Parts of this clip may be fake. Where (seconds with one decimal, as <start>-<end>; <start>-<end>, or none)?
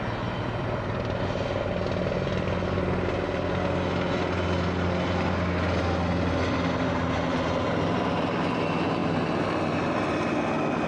none